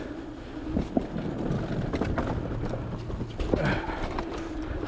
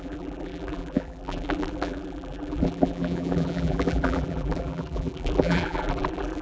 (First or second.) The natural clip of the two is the first